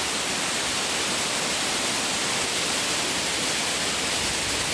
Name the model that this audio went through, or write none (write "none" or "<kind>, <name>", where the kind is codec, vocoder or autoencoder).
none